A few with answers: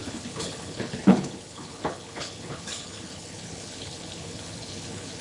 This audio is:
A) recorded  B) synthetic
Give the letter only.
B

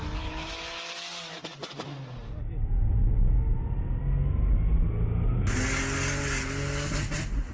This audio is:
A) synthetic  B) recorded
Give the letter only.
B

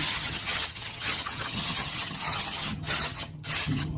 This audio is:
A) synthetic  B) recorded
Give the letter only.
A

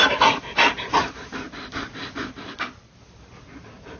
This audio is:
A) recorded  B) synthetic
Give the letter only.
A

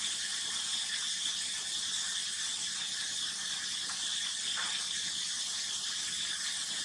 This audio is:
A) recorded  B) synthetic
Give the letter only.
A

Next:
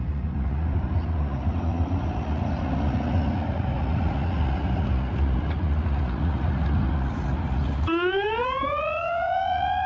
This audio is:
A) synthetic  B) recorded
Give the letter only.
A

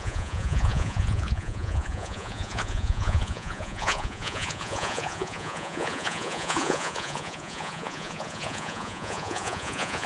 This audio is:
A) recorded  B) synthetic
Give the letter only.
B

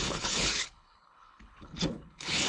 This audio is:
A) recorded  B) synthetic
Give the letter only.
B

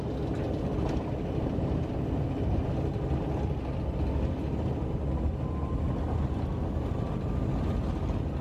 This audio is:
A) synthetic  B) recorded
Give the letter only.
B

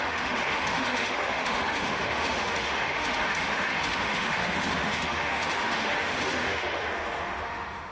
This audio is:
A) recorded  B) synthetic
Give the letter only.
B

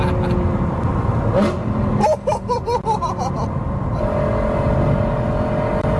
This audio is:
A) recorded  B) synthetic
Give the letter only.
A